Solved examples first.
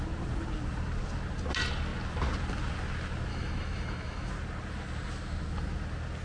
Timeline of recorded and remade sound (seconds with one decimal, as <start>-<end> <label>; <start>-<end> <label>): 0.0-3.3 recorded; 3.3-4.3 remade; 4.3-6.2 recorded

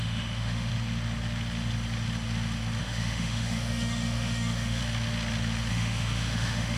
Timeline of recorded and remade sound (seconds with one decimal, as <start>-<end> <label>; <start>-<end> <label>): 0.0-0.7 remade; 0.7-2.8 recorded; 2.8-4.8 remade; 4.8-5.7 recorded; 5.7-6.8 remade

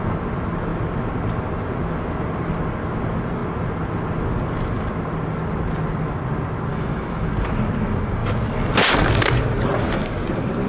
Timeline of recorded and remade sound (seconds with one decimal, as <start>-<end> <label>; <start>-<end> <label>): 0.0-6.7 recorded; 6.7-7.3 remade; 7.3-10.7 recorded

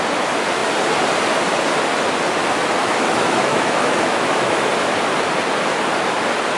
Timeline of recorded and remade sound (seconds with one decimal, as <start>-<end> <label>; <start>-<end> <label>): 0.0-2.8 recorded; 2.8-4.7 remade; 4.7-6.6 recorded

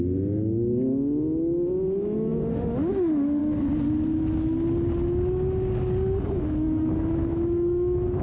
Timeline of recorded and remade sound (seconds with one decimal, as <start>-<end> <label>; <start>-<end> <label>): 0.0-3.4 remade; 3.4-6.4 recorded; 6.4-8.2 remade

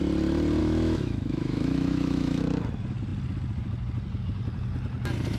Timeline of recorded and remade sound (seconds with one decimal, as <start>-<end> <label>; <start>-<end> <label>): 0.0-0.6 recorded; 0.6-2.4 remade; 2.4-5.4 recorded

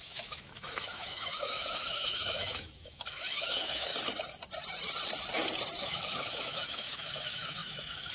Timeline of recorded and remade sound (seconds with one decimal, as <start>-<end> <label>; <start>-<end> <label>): 0.0-3.9 remade; 3.9-5.8 recorded; 5.8-8.1 remade

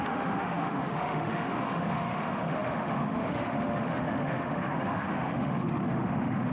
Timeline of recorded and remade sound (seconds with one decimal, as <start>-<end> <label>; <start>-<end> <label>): 0.0-6.5 remade